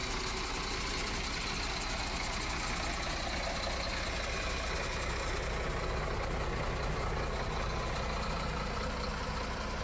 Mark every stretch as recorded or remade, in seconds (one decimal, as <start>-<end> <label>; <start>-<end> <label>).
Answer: 0.0-9.8 recorded